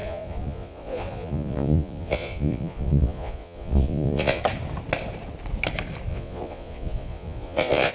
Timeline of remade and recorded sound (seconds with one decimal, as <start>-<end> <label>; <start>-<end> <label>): 0.0-4.4 remade; 4.4-6.1 recorded; 6.1-7.9 remade